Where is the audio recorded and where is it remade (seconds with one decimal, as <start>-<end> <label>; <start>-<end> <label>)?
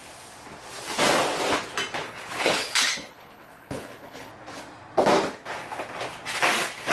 0.0-2.0 recorded; 2.0-4.3 remade; 4.3-6.9 recorded